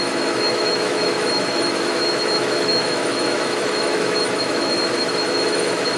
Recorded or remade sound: remade